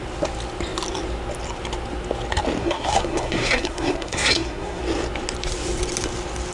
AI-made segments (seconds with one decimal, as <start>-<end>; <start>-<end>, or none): 2.6-4.8